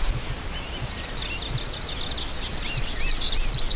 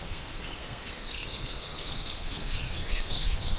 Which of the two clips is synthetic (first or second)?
second